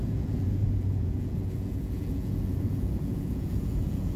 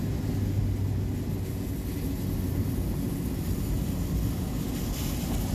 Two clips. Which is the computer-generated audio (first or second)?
first